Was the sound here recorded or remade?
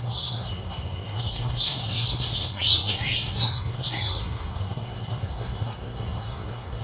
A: remade